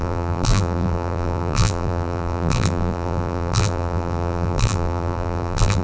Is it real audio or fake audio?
fake